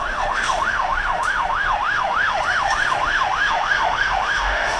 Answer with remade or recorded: remade